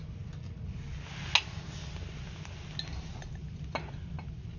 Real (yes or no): yes